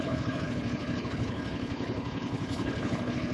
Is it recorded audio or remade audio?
remade